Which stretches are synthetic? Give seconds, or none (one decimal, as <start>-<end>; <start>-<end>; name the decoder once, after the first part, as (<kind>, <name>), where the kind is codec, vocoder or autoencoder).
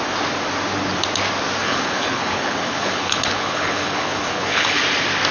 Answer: 1.6-4.8 (codec, HILCodec)